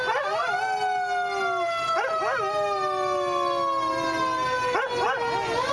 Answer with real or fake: real